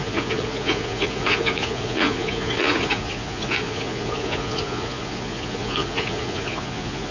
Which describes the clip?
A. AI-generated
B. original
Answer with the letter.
A